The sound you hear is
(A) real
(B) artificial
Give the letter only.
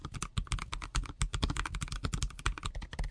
A